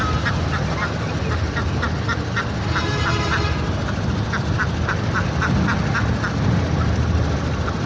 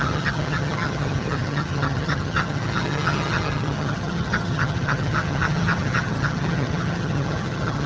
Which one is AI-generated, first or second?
second